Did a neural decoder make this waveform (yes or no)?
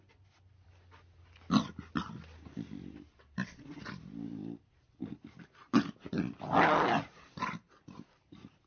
no